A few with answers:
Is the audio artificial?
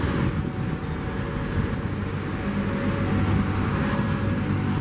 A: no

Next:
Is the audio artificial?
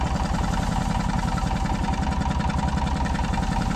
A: no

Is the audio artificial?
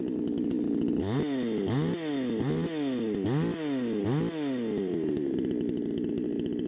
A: no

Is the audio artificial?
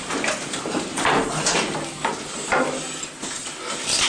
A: no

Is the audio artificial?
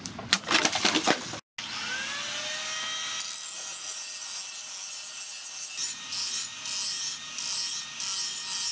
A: no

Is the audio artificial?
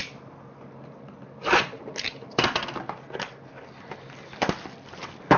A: no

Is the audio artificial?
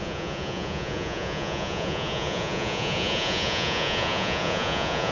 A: yes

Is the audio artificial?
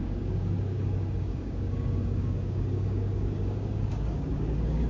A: yes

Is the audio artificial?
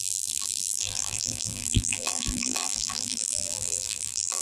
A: yes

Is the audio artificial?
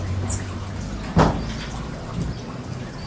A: no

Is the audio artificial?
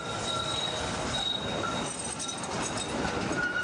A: no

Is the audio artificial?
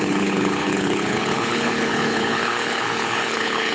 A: yes